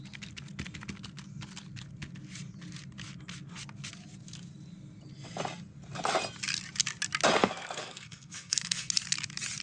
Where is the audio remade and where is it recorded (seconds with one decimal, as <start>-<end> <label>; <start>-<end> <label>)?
0.0-7.4 recorded; 7.4-8.9 remade; 8.9-9.6 recorded

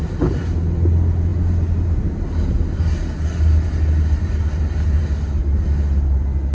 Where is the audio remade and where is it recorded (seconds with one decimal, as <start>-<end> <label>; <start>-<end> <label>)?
0.0-6.5 recorded

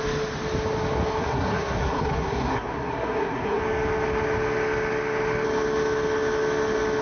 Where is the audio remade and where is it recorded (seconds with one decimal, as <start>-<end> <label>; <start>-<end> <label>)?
0.0-1.2 recorded; 1.2-3.6 remade; 3.6-7.0 recorded

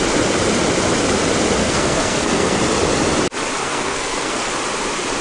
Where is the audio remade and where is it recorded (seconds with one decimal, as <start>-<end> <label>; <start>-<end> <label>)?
0.0-1.6 recorded; 1.6-2.6 remade; 2.6-3.6 recorded; 3.6-4.5 remade; 4.5-5.2 recorded

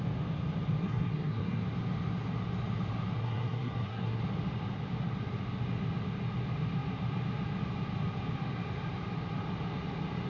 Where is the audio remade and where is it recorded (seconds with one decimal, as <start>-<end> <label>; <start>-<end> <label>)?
0.0-0.8 recorded; 0.8-1.6 remade; 1.6-3.2 recorded; 3.2-4.2 remade; 4.2-10.3 recorded

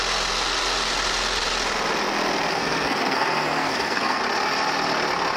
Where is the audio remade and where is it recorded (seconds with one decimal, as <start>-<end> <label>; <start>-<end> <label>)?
0.0-2.5 recorded; 2.5-4.2 remade; 4.2-5.4 recorded

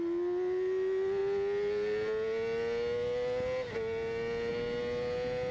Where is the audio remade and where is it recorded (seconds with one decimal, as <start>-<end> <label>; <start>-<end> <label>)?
0.0-5.5 recorded

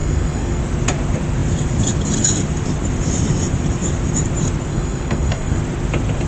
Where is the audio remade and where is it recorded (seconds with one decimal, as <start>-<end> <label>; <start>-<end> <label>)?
0.0-0.6 remade; 0.6-4.7 recorded; 4.7-5.6 remade; 5.6-6.3 recorded